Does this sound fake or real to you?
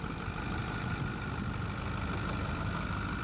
fake